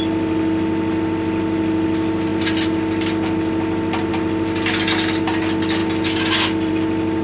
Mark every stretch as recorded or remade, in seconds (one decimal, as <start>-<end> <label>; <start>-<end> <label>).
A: 0.0-7.2 recorded